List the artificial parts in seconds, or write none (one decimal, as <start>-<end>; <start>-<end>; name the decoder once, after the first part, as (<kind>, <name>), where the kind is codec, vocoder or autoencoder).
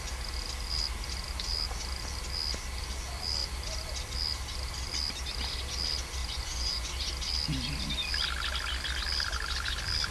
6.2-6.9 (vocoder, Vocos)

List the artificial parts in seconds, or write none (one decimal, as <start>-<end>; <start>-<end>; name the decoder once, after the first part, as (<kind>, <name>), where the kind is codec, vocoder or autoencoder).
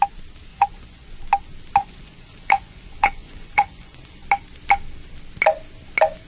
0.5-1.2 (vocoder, Vocos); 1.8-4.2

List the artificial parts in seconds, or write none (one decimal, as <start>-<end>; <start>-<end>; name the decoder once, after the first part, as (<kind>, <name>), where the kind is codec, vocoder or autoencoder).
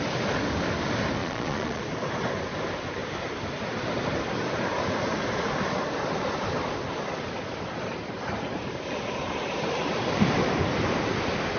1.2-1.8 (vocoder, Vocos)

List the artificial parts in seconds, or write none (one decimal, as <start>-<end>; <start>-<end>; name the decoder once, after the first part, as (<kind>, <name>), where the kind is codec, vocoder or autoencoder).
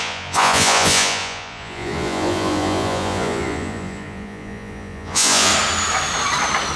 0.0-5.5 (vocoder, Vocos)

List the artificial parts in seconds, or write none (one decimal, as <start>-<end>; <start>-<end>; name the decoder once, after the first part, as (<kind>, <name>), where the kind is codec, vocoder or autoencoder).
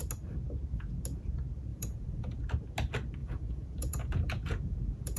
1.7-2.4 (vocoder, Vocos); 3.2-5.2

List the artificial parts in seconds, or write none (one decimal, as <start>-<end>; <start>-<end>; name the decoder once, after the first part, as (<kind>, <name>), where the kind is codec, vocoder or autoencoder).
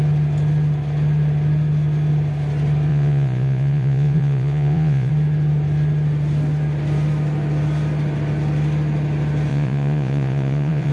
2.9-5.1 (vocoder, Vocos); 9.5-10.9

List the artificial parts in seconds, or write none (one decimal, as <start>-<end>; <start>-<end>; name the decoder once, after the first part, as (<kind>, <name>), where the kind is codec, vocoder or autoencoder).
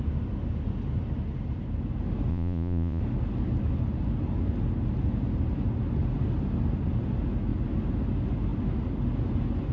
2.3-3.0 (vocoder, Vocos)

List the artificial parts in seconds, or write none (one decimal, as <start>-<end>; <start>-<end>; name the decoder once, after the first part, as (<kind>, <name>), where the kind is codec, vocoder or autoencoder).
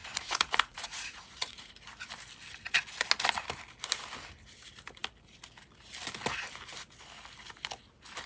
0.0-1.7 (vocoder, Vocos)